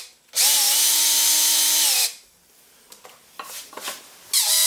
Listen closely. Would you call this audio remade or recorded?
recorded